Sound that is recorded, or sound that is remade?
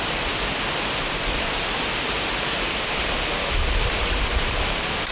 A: recorded